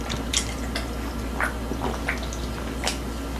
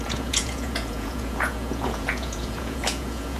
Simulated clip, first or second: second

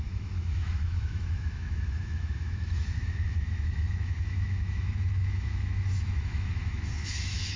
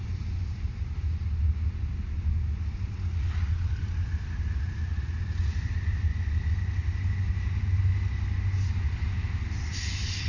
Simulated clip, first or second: first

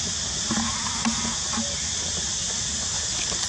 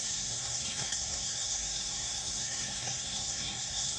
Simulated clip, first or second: second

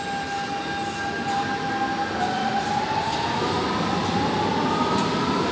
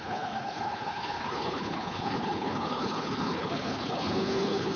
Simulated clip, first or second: second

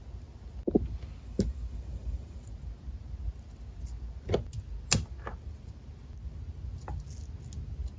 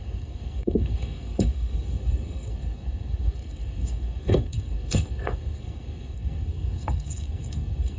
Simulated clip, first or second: second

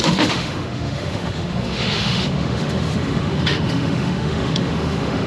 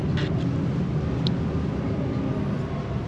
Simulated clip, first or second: first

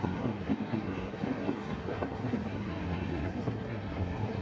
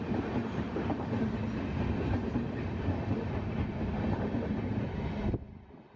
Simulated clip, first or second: first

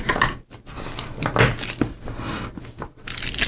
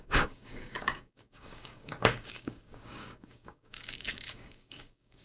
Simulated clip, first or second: second